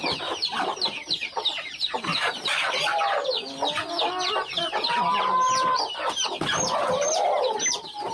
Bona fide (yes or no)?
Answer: yes